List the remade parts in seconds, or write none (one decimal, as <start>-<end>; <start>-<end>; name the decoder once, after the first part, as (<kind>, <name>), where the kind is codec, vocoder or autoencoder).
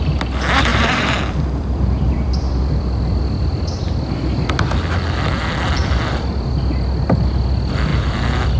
0.7-3.7 (vocoder, BigVGAN v2); 5.8-6.6; 7.9-8.6